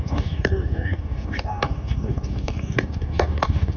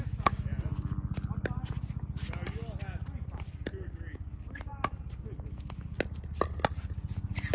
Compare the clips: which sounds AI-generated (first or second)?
first